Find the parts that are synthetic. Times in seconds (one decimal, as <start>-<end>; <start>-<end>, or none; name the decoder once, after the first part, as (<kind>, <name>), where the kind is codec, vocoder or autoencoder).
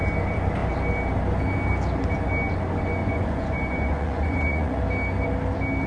3.0-4.8 (vocoder, Vocos)